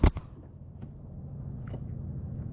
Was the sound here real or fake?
real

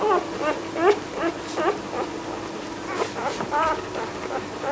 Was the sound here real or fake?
real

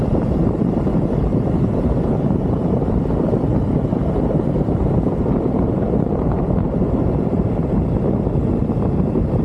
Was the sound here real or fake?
fake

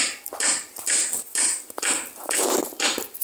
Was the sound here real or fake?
fake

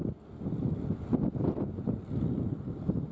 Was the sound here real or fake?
real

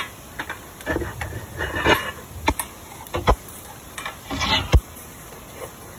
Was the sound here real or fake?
real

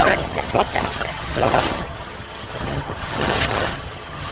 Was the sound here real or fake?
fake